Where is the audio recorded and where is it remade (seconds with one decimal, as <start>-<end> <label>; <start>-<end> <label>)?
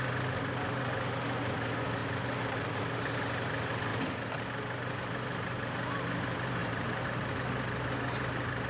0.0-2.0 recorded; 2.0-2.8 remade; 2.8-6.6 recorded; 6.6-7.3 remade; 7.3-8.7 recorded